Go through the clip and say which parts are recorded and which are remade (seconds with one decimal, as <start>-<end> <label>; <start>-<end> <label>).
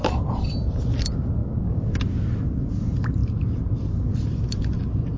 0.0-0.8 remade; 0.8-3.2 recorded; 3.2-4.0 remade; 4.0-5.2 recorded